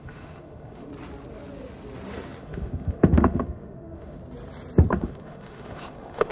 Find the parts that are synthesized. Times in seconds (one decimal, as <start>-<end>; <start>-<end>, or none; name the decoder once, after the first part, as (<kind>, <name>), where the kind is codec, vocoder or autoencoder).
0.0-0.9 (autoencoder, DAC-VAE); 2.4-4.2; 4.9-6.3